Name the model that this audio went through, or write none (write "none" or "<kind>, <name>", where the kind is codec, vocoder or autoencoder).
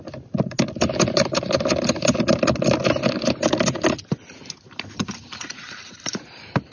none